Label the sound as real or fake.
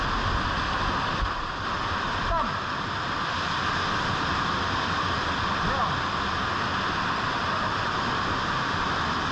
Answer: real